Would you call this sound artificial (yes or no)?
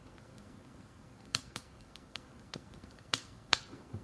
yes